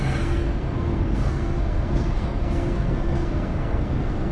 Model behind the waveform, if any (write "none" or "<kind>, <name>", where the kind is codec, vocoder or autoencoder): codec, SNAC